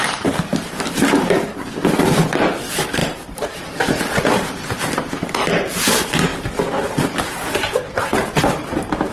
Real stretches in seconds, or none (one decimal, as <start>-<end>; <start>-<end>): 6.3-8.7